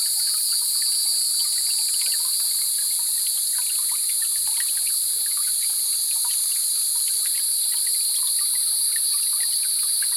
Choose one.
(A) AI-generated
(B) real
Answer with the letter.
B